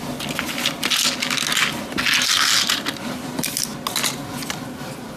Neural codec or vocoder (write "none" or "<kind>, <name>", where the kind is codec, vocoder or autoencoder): none